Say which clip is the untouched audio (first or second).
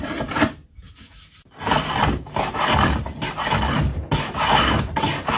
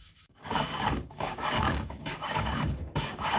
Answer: first